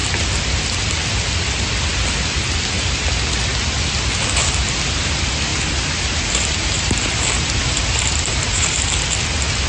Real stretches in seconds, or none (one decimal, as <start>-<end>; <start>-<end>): 0.0-5.5; 8.9-9.7

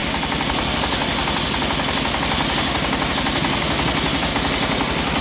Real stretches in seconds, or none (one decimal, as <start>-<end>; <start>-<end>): 0.0-5.2

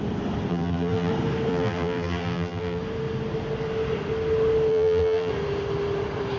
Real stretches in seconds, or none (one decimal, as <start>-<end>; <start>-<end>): 0.0-0.5; 1.1-1.5; 2.8-4.7; 5.3-6.4